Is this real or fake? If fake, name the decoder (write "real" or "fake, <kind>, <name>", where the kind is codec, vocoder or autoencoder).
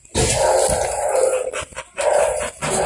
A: real